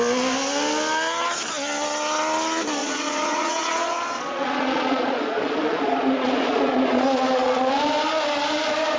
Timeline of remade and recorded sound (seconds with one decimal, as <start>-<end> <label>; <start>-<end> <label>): 0.0-2.8 recorded; 2.8-7.7 remade; 7.7-9.0 recorded